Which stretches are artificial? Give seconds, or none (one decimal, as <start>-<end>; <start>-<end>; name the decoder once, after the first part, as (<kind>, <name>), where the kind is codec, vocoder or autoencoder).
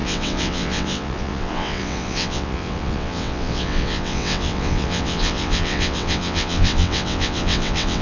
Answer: 0.0-8.0 (vocoder, WaveNeXt)